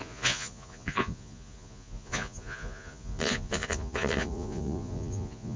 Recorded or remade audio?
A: remade